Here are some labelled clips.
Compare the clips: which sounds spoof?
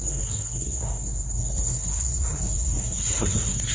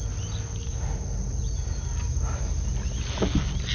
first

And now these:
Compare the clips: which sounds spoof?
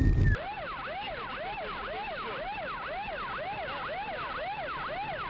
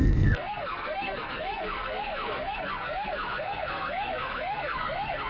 second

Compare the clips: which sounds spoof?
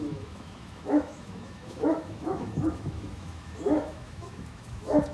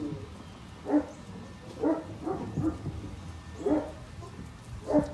first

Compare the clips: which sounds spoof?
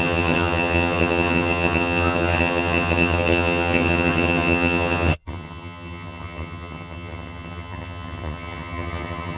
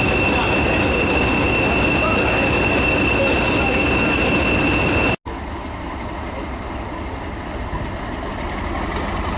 first